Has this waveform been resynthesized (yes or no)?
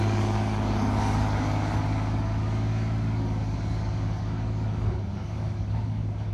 yes